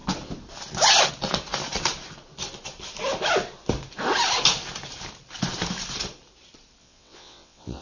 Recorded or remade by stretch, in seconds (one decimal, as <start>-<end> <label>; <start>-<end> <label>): 0.0-6.8 recorded; 6.8-7.8 remade